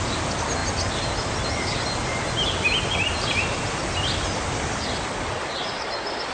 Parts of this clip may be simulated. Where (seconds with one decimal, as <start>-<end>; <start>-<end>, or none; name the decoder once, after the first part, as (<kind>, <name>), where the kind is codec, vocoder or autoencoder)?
none